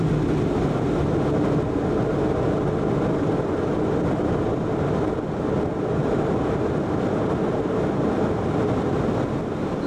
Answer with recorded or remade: recorded